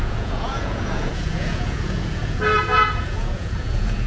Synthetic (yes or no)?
yes